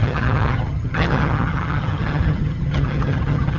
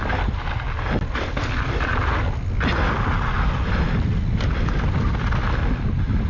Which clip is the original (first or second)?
second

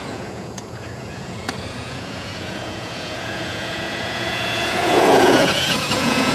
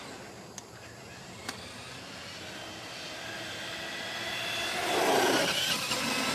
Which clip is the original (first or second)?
second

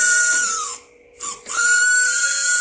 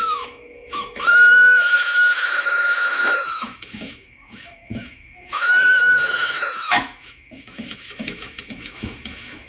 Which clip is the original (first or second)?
first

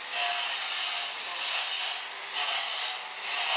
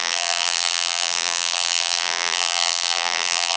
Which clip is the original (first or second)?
first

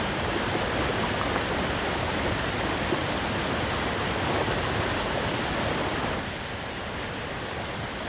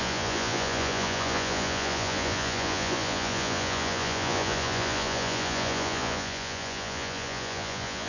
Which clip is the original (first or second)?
first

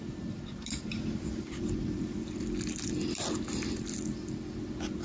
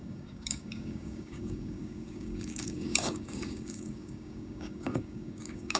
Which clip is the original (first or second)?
first